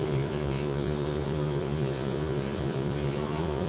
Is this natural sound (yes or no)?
no